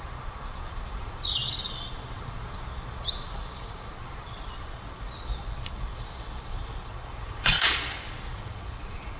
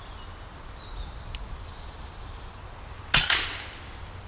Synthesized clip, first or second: first